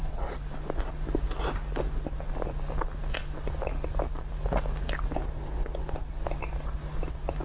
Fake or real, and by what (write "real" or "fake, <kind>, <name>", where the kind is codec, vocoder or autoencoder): real